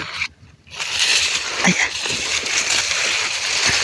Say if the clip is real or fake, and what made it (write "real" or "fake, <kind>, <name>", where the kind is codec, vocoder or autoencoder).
real